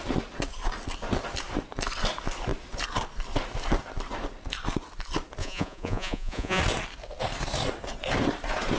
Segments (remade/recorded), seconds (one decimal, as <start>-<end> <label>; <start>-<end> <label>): 0.0-5.4 recorded; 5.4-6.6 remade; 6.6-8.8 recorded